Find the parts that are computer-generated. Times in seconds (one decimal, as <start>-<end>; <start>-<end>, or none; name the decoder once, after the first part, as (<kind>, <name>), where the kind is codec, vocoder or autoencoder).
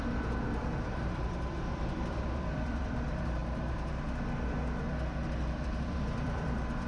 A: 0.0-3.4 (vocoder, BigVGAN v2); 5.3-6.9